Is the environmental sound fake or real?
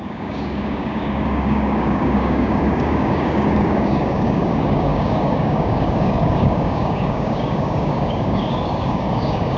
fake